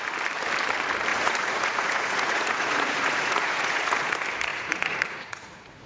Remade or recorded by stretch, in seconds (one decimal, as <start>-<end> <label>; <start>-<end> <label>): 0.0-1.1 recorded; 1.1-4.1 remade; 4.1-4.5 recorded; 4.5-5.9 remade